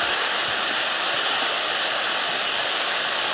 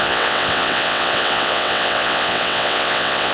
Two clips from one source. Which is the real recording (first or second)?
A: first